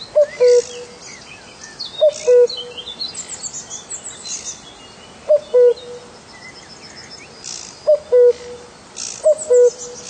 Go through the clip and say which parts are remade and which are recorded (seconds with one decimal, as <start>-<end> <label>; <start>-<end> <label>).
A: 0.0-10.1 recorded